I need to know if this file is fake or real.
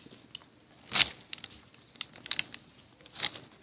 real